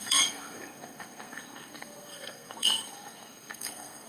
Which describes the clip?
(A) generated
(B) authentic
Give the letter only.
A